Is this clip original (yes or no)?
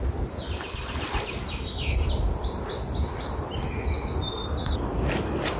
yes